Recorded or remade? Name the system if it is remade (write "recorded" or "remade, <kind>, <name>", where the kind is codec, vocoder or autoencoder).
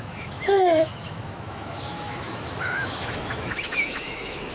remade, autoencoder, DAC-VAE